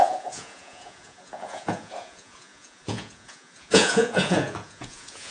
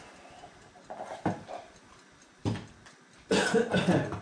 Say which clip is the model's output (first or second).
first